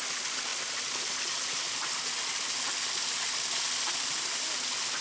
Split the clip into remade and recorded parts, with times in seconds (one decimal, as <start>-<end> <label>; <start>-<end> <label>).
0.0-5.0 recorded